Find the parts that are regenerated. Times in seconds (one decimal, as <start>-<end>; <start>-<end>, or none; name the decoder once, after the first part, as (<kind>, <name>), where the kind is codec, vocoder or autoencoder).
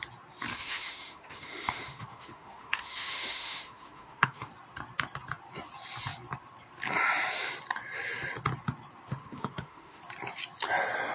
0.5-4.5 (autoencoder, DAC-VAE); 9.1-10.0